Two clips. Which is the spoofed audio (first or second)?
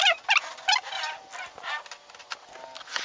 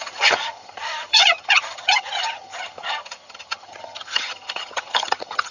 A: second